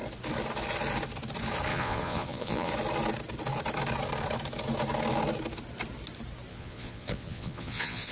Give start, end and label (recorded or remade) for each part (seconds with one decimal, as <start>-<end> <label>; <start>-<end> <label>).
0.0-1.7 recorded; 1.7-2.7 remade; 2.7-6.5 recorded; 6.5-8.1 remade

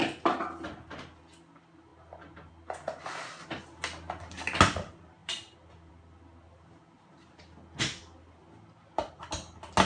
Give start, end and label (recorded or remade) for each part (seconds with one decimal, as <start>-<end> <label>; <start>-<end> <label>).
0.0-9.9 recorded